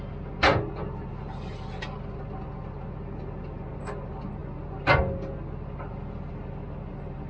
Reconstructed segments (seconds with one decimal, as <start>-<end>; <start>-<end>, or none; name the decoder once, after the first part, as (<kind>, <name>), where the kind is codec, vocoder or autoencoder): none